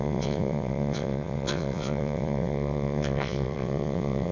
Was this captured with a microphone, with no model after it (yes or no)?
no